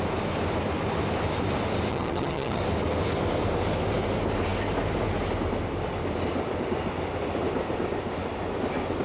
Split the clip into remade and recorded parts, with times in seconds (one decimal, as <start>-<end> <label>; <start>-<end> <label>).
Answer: 0.0-1.9 recorded; 1.9-2.6 remade; 2.6-9.0 recorded